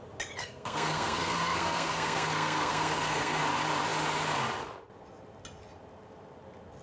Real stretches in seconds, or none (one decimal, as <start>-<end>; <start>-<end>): 0.0-0.4; 3.4-6.8